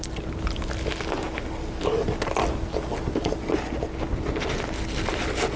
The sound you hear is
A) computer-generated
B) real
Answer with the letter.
B